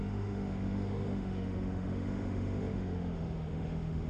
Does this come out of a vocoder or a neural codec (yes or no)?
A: yes